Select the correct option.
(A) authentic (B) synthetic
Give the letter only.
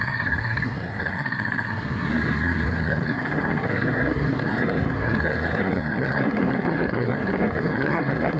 B